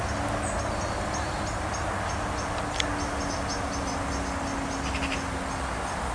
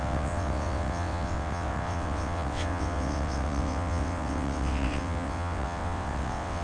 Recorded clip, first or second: first